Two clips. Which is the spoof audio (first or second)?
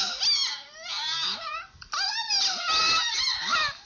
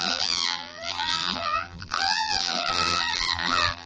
second